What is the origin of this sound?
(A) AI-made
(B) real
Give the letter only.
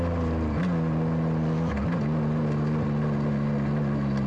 B